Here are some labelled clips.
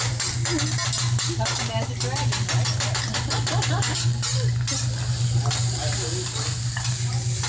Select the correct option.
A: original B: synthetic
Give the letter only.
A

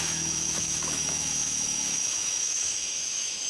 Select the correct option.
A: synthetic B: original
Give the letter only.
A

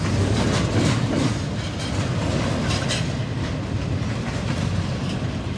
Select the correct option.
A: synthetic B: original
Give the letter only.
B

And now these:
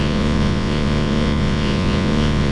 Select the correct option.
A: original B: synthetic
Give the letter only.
B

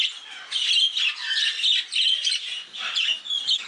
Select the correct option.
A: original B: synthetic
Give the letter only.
A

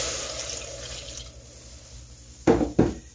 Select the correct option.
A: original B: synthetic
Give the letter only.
A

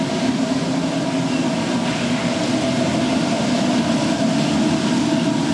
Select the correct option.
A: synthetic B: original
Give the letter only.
B